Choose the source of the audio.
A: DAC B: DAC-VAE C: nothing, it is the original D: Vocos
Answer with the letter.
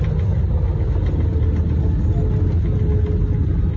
C